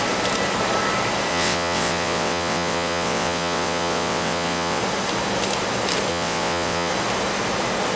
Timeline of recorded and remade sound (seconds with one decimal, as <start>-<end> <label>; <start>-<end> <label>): 0.0-1.3 recorded; 1.3-4.8 remade; 4.8-6.1 recorded; 6.1-6.9 remade; 6.9-8.0 recorded